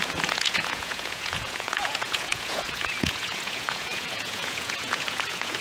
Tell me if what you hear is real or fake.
fake